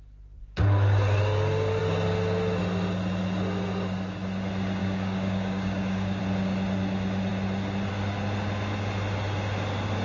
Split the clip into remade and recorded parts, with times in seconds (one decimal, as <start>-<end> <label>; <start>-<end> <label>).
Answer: 0.0-4.8 recorded; 4.8-6.2 remade; 6.2-10.0 recorded